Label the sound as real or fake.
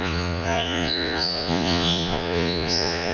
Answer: fake